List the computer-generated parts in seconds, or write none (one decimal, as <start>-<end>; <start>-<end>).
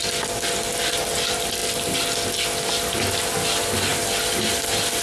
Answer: none